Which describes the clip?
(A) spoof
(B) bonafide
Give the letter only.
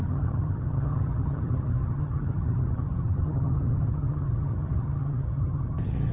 A